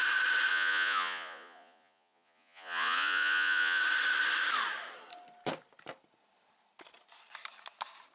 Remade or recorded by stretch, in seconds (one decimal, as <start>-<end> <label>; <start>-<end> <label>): 0.0-0.5 recorded; 0.5-3.8 remade; 3.8-8.1 recorded